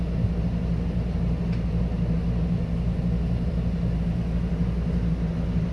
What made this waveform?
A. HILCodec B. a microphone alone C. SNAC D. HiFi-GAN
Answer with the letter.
B